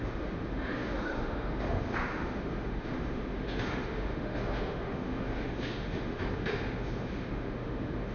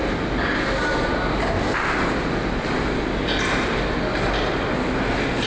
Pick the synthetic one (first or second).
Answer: first